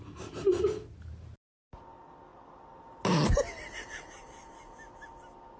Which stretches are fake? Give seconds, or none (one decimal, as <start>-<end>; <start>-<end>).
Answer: none